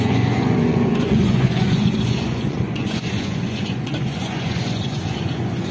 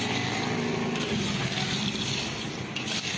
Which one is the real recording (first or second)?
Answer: second